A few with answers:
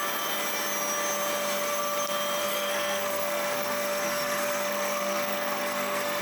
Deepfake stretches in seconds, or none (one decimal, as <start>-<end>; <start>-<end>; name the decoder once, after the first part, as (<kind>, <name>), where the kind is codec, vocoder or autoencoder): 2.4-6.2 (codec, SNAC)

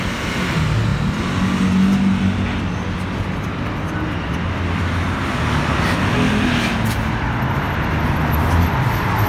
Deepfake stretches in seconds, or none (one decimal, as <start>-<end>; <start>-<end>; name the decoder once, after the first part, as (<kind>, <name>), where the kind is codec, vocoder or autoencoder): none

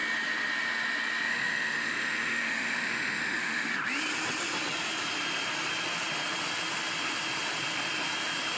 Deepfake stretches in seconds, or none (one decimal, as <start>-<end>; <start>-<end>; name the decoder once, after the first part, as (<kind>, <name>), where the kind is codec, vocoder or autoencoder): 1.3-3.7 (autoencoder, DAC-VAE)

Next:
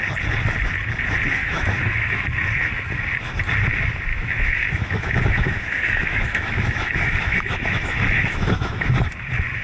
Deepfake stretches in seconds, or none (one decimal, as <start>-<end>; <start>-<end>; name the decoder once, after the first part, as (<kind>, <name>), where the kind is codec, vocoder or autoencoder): 1.4-2.3 (autoencoder, DAC-VAE); 4.1-8.9